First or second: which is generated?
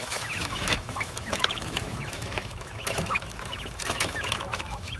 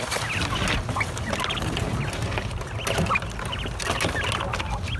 first